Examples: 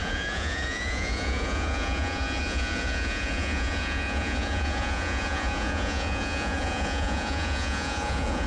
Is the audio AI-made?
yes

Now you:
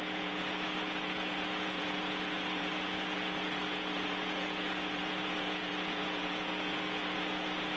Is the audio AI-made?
yes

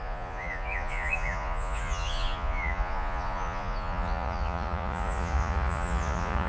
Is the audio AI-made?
yes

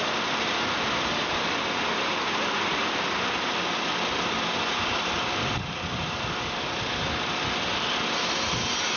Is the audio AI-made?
no